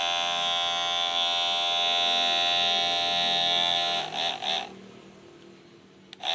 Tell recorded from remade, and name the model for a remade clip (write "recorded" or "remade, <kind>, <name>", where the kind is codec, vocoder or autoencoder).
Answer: recorded